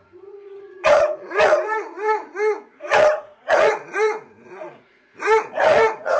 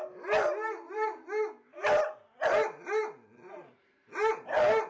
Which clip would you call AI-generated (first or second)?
first